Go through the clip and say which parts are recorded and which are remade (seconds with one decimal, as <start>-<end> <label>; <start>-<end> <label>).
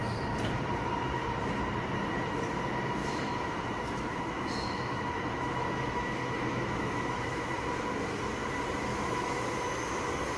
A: 0.0-3.0 recorded; 3.0-7.5 remade; 7.5-8.9 recorded; 8.9-10.0 remade; 10.0-10.4 recorded